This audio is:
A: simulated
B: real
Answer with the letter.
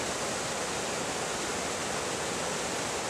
B